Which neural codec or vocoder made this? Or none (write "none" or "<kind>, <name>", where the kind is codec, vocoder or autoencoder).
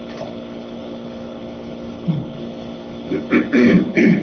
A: codec, HILCodec